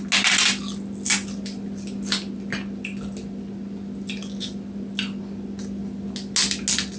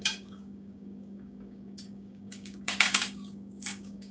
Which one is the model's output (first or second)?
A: second